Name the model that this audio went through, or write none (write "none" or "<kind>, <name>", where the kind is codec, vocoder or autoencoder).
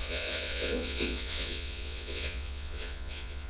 vocoder, Vocos